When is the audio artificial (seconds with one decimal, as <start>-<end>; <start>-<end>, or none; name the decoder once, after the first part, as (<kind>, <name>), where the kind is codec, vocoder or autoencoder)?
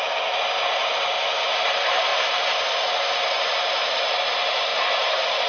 none